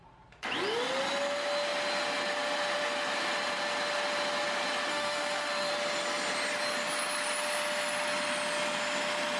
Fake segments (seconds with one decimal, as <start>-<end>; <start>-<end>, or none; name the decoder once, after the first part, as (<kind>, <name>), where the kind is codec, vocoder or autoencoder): 4.9-5.7 (autoencoder, DAC-VAE)

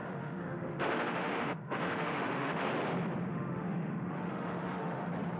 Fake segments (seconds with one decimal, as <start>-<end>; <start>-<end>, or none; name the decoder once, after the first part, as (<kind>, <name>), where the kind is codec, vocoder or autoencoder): 0.0-2.7 (autoencoder, DAC-VAE); 3.3-5.0

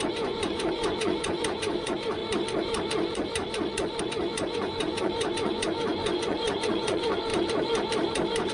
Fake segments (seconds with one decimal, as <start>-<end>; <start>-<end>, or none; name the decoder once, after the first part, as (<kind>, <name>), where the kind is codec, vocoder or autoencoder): 0.0-2.2 (vocoder, Vocos); 4.0-7.3

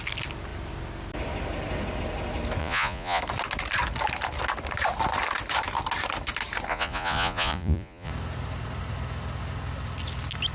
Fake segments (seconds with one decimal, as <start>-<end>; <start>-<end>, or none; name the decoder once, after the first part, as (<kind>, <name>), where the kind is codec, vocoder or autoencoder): 2.6-3.2 (vocoder, Vocos); 6.7-8.1

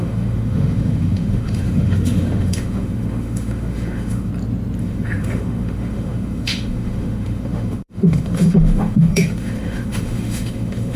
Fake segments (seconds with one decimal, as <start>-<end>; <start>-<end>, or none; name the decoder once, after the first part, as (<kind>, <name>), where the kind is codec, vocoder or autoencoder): 0.0-4.3 (autoencoder, DAC-VAE); 4.8-11.0